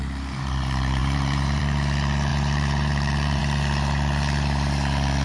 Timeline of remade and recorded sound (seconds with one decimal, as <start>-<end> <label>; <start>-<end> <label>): 0.0-1.0 recorded; 1.0-1.6 remade; 1.6-2.3 recorded; 2.3-3.4 remade; 3.4-5.2 recorded